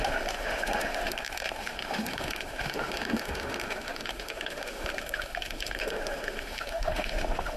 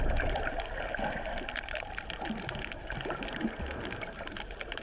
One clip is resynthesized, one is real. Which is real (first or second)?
second